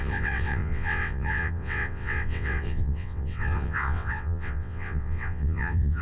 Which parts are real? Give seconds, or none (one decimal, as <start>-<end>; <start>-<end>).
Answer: none